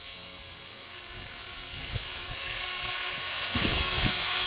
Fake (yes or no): yes